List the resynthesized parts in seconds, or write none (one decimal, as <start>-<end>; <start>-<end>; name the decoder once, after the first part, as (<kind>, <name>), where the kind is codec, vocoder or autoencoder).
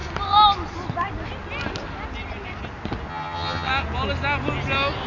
3.1-3.7 (vocoder, HiFi-GAN)